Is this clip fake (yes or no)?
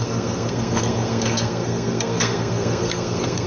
yes